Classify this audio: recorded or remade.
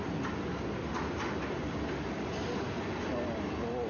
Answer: recorded